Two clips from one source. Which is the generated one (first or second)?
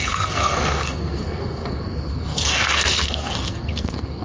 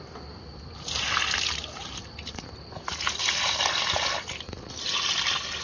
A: first